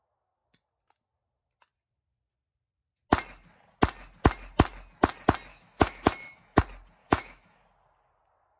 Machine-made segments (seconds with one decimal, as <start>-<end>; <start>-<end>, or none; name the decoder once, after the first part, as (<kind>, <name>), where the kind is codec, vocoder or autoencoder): 5.5-6.6 (autoencoder, DAC-VAE); 7.0-7.6